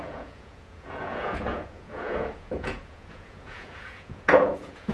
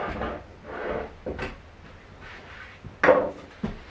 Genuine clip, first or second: second